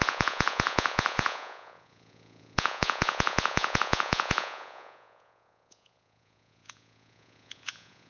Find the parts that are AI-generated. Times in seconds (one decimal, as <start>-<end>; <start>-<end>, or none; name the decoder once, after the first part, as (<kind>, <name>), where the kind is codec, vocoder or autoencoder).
0.0-8.1 (vocoder, Vocos)